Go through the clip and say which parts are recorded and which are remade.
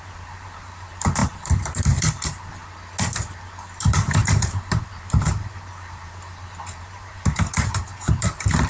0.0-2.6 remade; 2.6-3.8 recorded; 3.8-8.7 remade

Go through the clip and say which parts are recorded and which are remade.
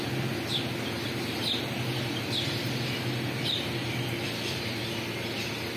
0.0-5.8 recorded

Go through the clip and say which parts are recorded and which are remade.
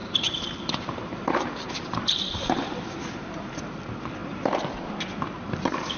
0.0-3.6 remade; 3.6-6.0 recorded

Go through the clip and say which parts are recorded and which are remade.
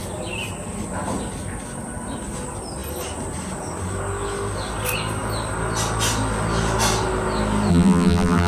0.0-7.7 recorded; 7.7-8.5 remade